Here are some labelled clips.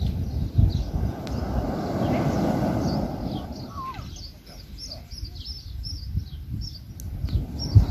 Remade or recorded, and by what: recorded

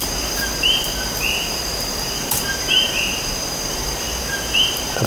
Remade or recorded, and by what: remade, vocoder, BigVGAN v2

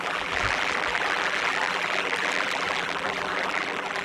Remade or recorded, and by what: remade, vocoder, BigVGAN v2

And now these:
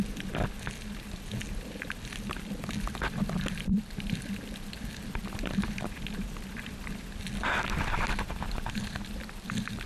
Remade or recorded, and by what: remade, vocoder, BigVGAN v2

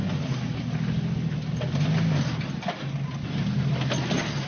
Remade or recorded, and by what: recorded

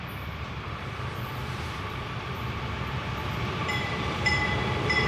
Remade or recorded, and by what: remade, vocoder, BigVGAN v2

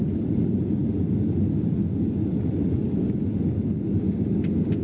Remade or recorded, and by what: recorded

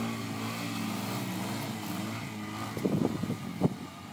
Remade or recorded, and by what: recorded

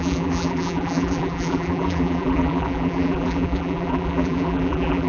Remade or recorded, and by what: remade, vocoder, BigVGAN v2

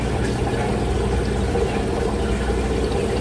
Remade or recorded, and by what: recorded